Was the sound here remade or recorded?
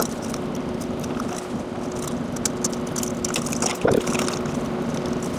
recorded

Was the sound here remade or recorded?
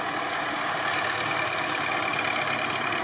recorded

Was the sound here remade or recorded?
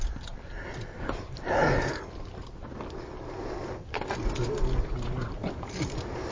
recorded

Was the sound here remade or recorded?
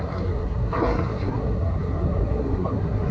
remade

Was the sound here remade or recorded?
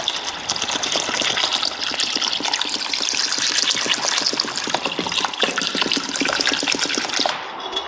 recorded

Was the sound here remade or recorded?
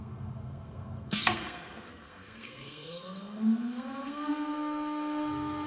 remade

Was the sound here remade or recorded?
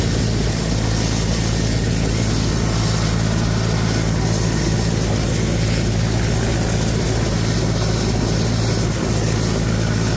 recorded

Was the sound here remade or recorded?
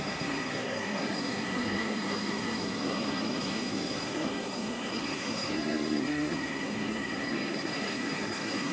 remade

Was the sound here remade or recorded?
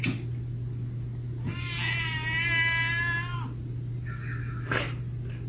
recorded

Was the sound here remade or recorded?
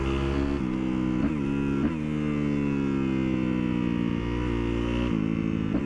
recorded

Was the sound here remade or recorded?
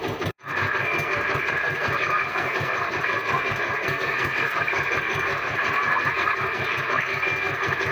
remade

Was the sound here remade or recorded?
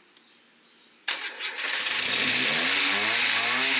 recorded